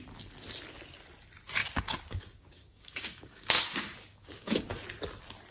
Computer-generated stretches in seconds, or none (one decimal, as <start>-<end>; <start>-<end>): 1.6-4.6